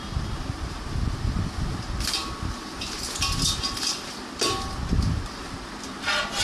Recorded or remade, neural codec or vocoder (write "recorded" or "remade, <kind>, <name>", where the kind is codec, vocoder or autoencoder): recorded